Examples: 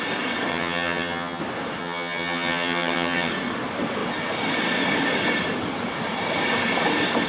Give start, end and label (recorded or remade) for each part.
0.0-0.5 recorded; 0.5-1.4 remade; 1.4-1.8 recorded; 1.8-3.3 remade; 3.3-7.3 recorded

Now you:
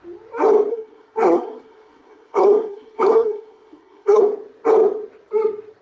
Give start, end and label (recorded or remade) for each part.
0.0-0.7 recorded; 0.7-4.2 remade; 4.2-5.8 recorded